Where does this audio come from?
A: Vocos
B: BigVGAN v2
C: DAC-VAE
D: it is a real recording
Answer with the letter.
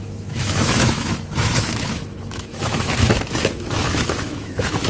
C